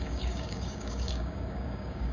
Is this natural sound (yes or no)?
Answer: no